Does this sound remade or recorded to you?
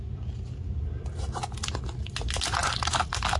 recorded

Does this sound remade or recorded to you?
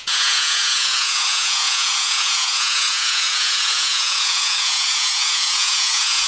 remade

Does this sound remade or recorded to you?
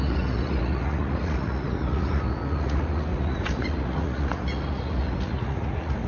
remade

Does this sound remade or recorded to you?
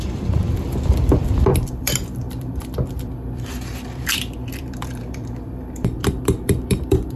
remade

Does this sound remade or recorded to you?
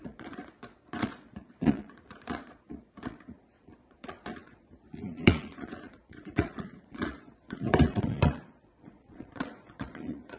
remade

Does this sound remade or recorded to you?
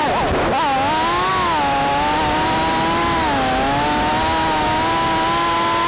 recorded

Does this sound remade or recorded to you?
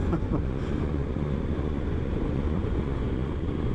remade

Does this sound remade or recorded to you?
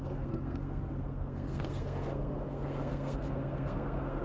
remade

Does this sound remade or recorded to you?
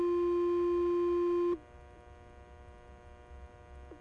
recorded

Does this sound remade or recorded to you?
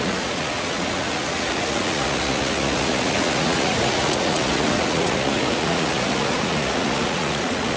remade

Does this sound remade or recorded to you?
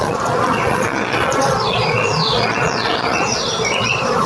remade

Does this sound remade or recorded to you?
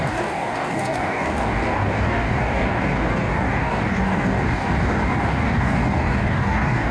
remade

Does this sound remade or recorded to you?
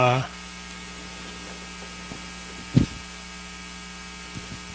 recorded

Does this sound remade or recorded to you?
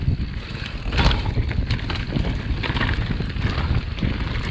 recorded